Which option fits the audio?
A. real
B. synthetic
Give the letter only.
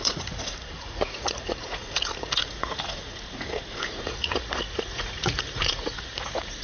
B